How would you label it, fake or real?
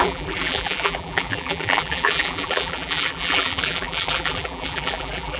fake